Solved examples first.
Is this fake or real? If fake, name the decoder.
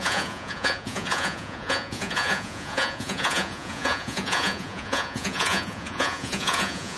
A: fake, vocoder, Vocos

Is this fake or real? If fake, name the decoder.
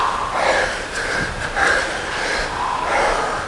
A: real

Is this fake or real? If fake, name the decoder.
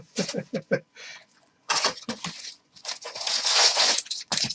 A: fake, vocoder, Vocos